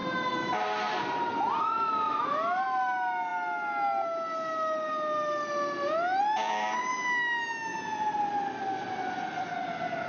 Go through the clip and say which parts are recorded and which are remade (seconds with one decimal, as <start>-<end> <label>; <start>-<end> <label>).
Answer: 0.0-1.3 remade; 1.3-7.7 recorded; 7.7-8.5 remade; 8.5-10.1 recorded